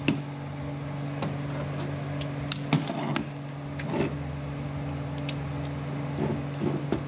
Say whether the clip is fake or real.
real